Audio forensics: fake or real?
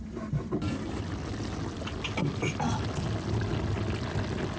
real